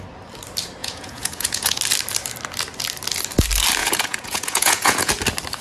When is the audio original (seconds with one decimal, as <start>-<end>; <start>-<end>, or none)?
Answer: 0.0-0.8; 1.8-3.8; 5.1-5.6

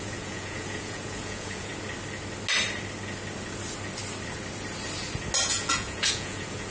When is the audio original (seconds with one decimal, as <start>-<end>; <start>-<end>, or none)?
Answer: 1.7-5.4

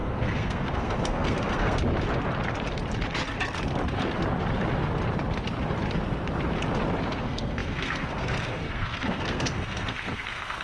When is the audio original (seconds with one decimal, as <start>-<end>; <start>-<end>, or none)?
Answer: 1.8-7.1

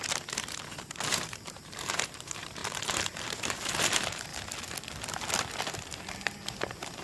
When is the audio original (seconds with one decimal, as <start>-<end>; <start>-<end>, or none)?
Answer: 4.3-7.0

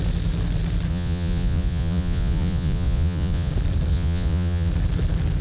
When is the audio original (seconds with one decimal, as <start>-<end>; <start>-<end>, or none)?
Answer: 0.0-0.9; 3.5-3.9; 4.7-5.4